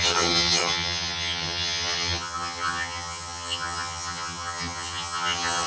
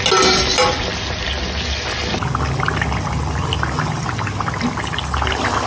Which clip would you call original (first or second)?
second